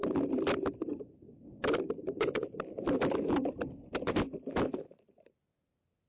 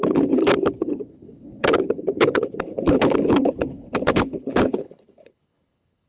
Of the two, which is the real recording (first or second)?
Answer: first